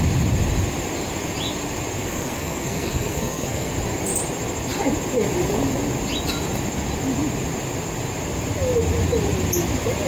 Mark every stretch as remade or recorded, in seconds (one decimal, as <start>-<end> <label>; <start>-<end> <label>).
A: 0.0-2.0 recorded; 2.0-3.7 remade; 3.7-10.1 recorded